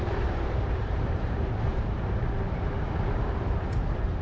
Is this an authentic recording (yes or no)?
no